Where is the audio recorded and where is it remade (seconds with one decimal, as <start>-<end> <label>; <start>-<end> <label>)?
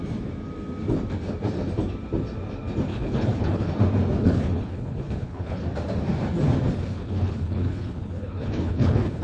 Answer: 0.0-2.9 recorded; 2.9-3.7 remade; 3.7-4.2 recorded; 4.2-5.6 remade; 5.6-6.8 recorded; 6.8-9.2 remade